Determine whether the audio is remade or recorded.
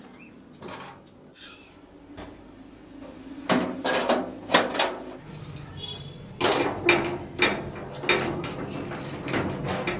recorded